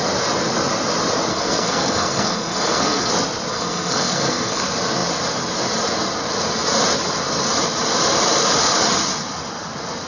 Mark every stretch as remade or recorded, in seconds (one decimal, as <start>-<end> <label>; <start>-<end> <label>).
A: 0.0-1.3 recorded; 1.3-3.1 remade; 3.1-3.5 recorded; 3.5-4.6 remade; 4.6-10.1 recorded